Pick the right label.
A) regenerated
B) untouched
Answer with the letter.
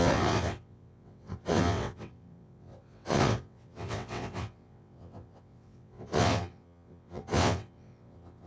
A